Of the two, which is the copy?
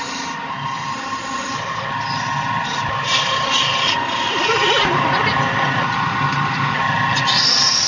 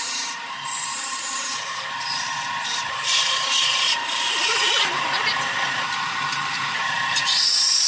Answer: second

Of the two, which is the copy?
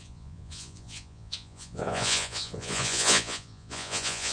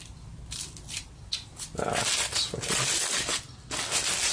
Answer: first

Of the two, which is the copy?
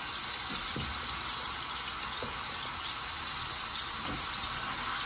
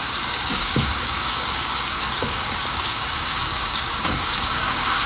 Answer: second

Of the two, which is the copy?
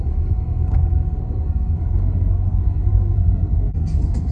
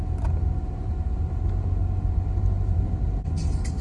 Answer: first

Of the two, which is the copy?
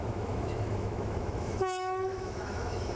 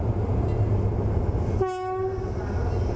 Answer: first